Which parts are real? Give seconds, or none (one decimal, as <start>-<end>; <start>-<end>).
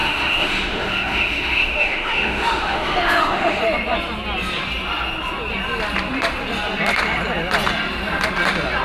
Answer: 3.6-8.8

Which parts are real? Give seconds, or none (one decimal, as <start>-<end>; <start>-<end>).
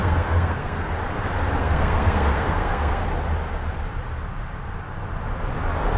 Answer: 0.9-1.6; 3.0-6.0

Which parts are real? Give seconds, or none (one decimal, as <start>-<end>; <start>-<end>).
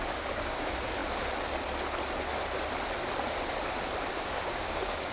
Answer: 1.0-4.1